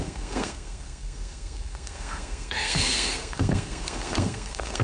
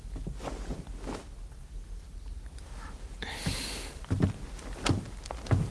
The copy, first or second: first